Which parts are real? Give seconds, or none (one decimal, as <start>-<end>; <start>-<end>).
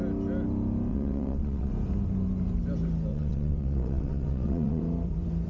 0.0-0.9; 1.7-3.1; 4.8-5.5